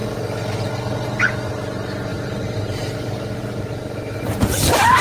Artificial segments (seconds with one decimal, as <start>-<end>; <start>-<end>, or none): 2.1-5.0